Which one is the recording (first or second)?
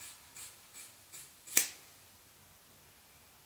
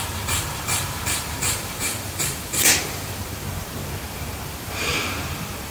first